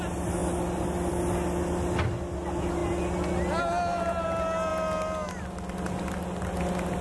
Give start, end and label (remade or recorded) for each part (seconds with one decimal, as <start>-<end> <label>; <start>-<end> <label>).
0.0-7.0 recorded